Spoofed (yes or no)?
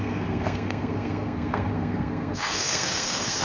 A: yes